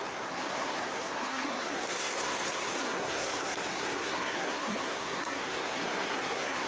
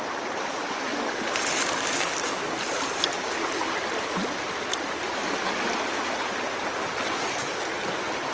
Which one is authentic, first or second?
second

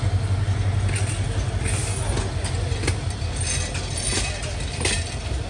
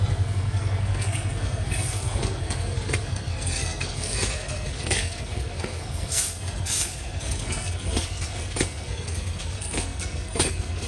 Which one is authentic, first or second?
first